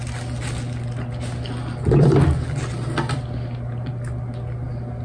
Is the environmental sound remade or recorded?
recorded